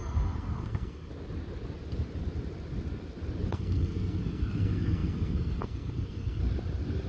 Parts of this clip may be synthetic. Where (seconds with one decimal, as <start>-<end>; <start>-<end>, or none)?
0.0-1.1; 3.5-6.4